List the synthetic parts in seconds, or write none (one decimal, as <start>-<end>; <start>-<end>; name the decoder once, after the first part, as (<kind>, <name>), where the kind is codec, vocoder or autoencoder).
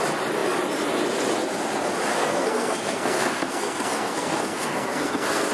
2.1-5.5 (codec, SNAC)